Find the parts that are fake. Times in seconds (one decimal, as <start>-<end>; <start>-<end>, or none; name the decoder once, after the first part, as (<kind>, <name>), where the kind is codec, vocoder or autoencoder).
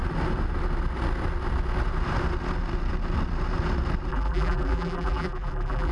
4.1-5.9 (vocoder, BigVGAN v2)